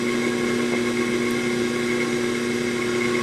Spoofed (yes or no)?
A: no